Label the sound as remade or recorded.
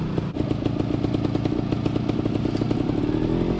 recorded